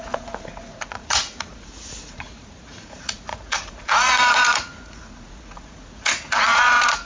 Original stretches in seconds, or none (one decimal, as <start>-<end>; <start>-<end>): none